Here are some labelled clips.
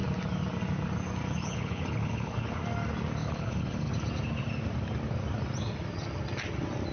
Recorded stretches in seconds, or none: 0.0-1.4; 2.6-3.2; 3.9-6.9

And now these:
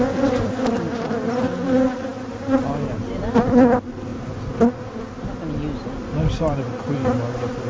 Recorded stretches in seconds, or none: 0.0-7.7